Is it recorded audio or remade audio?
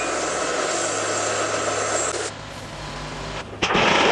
recorded